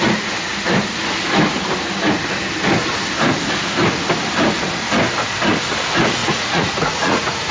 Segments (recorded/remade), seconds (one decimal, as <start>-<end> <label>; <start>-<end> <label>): 0.0-6.2 recorded; 6.2-7.5 remade

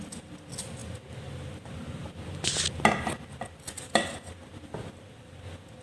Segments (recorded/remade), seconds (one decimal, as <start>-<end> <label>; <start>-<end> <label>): 0.0-5.8 recorded